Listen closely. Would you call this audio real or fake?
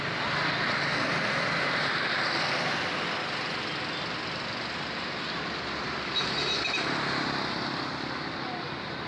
real